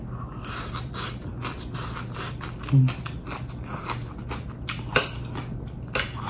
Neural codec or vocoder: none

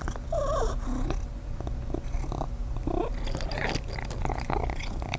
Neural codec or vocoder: none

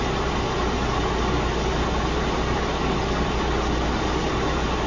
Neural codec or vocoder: none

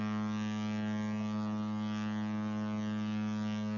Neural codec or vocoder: none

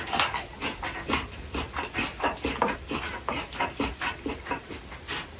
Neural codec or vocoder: none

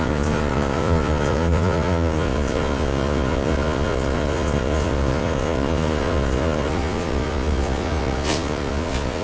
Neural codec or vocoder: vocoder, Vocos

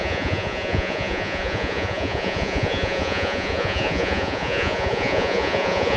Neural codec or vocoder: vocoder, Vocos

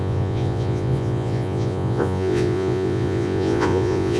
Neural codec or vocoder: vocoder, Vocos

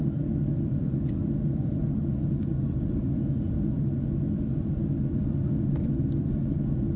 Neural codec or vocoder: none